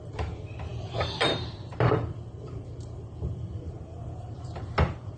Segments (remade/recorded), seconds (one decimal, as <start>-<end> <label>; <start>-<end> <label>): 0.0-5.2 remade